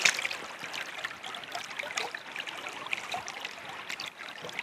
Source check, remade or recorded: recorded